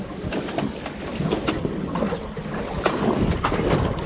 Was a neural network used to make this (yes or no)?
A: no